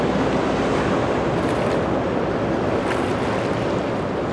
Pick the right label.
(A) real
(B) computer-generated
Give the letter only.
A